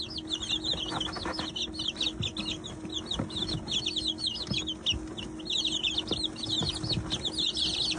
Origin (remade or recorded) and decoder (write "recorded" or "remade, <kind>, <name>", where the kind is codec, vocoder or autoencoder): recorded